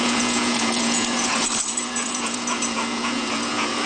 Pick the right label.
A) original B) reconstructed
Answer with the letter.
B